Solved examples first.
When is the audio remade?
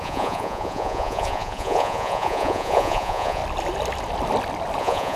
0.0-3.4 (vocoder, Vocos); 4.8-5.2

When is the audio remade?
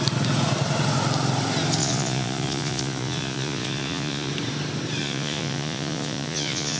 1.8-4.3 (vocoder, Vocos); 5.0-6.8